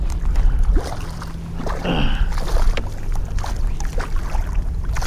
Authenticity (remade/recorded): recorded